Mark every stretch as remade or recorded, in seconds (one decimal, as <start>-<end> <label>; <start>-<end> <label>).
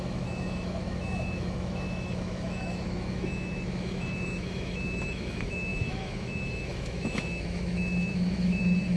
0.0-9.0 remade